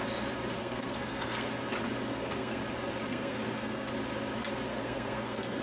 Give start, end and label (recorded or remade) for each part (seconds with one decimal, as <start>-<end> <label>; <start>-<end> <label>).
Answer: 0.0-0.6 recorded; 0.6-1.5 remade; 1.5-2.1 recorded; 2.1-2.6 remade; 2.6-3.1 recorded; 3.1-3.9 remade; 3.9-4.7 recorded; 4.7-5.6 remade